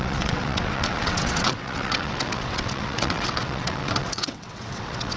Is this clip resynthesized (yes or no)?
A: yes